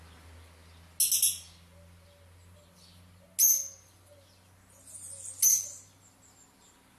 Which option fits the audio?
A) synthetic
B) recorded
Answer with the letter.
B